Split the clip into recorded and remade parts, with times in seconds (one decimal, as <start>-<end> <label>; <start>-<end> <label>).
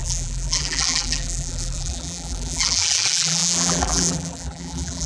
0.0-5.1 remade